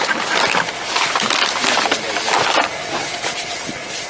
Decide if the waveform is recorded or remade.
recorded